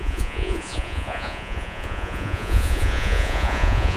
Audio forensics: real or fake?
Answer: fake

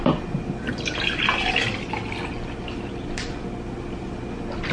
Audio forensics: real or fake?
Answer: real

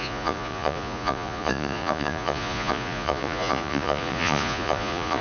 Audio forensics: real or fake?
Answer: fake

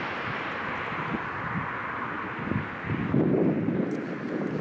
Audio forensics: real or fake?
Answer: real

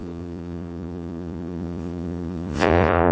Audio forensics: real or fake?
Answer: fake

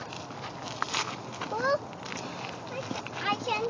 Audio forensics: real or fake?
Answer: real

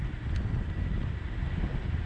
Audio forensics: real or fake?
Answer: real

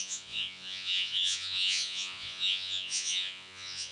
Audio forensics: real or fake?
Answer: fake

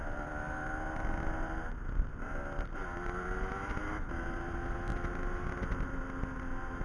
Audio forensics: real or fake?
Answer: real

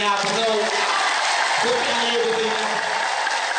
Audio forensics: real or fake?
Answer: real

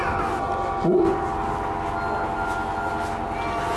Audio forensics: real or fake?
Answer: real